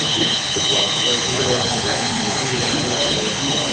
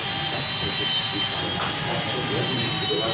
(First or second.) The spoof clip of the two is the first